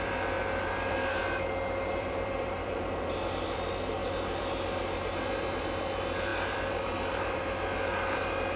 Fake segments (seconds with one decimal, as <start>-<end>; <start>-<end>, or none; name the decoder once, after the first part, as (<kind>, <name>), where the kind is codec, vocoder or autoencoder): 0.0-1.2 (vocoder, BigVGAN v2); 1.9-8.6